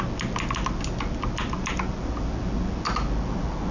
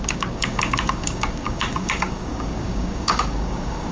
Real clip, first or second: first